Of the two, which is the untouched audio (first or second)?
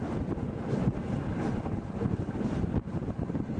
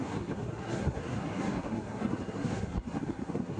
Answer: first